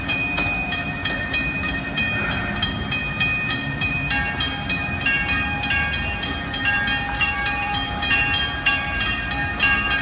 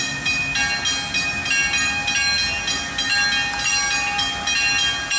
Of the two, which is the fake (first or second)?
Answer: first